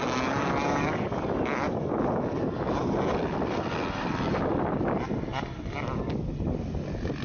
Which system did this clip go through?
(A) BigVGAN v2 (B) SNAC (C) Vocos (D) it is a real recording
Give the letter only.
D